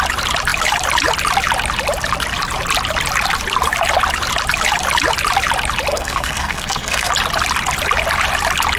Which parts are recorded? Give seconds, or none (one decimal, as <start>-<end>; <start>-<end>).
0.0-5.9; 7.1-8.8